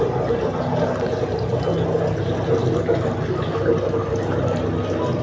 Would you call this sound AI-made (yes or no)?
no